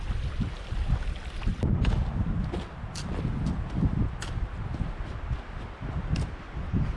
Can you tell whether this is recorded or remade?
recorded